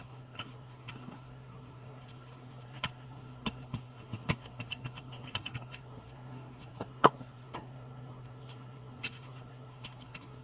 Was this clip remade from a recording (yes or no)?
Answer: yes